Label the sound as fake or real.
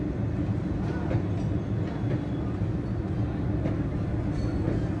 real